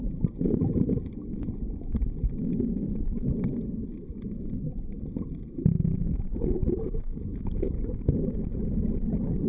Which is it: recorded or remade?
recorded